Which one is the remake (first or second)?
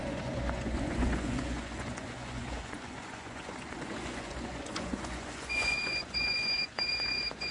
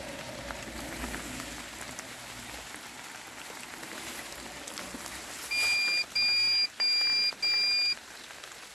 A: first